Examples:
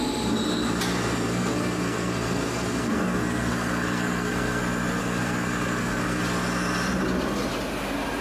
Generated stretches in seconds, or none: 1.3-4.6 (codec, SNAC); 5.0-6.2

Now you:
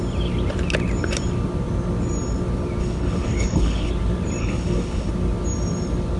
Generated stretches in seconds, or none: 2.8-3.9 (codec, HILCodec); 4.4-5.1

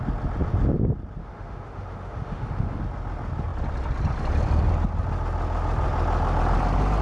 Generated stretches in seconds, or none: 1.2-2.8 (autoencoder, DAC-VAE)